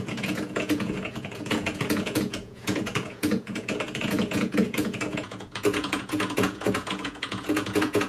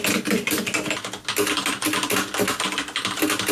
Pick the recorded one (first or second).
second